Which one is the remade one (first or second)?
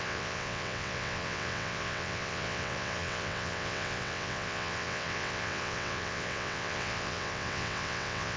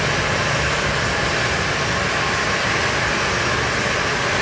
first